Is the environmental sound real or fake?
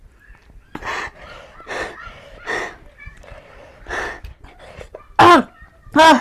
real